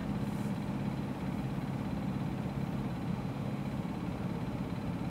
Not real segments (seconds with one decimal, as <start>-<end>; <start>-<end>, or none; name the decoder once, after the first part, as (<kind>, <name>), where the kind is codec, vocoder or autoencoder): 3.1-3.6 (autoencoder, DAC-VAE)